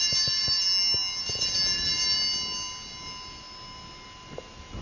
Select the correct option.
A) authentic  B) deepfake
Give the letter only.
A